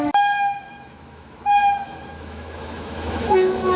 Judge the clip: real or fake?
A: fake